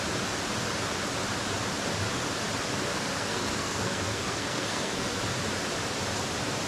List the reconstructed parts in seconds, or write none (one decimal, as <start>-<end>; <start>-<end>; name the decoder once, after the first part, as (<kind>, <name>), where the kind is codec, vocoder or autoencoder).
2.9-5.2 (codec, SNAC)